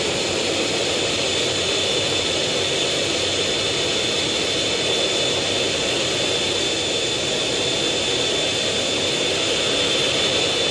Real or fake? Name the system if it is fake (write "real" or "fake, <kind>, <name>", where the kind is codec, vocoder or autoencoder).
real